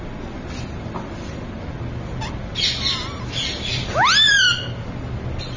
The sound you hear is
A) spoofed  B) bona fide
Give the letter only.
B